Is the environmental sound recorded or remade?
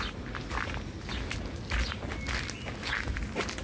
recorded